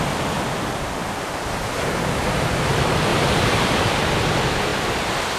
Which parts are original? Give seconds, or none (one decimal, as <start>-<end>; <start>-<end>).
0.0-1.0; 1.7-3.1; 4.0-5.4